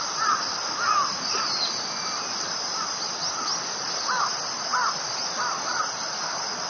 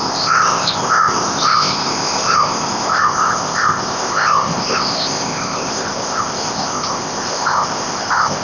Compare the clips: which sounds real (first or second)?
first